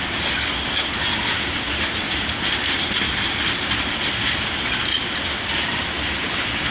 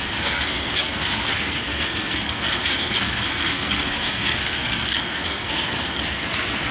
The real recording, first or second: first